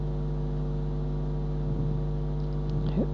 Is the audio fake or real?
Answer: real